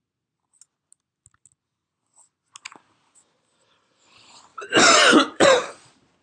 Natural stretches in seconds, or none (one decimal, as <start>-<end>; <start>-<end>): 0.0-4.5; 5.7-6.2